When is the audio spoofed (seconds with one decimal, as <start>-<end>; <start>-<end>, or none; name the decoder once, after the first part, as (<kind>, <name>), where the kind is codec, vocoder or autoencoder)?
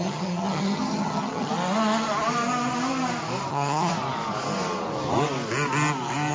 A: 0.0-1.5 (vocoder, HiFi-GAN); 3.5-3.9